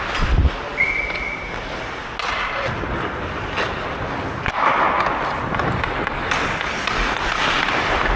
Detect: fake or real real